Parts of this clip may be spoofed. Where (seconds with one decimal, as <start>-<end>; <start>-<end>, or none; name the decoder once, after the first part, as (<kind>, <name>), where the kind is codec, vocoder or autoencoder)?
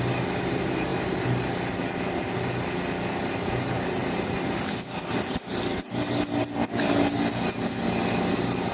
none